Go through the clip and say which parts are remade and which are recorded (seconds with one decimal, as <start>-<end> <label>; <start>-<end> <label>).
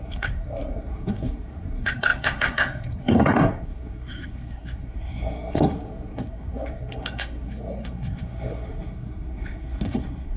0.0-10.4 remade